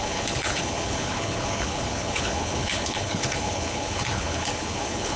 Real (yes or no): no